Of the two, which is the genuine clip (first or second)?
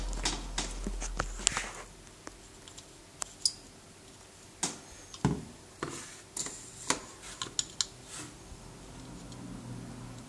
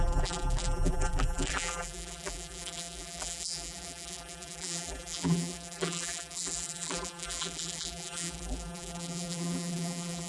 first